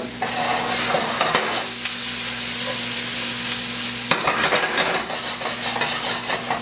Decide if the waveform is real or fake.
real